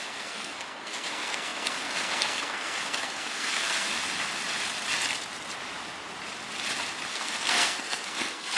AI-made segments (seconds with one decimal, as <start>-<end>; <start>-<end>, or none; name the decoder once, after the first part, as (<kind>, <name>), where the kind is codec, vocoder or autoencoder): 0.0-3.9 (codec, SNAC); 7.1-8.6

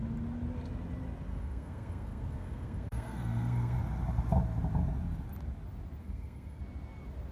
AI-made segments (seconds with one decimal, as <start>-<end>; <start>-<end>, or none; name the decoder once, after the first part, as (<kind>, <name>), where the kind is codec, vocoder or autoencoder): 1.3-3.8 (codec, SNAC); 6.0-6.6

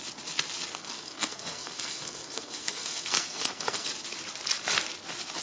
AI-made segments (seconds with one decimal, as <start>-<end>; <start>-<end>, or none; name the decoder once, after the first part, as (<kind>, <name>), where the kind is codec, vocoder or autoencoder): 0.7-3.9 (codec, SNAC)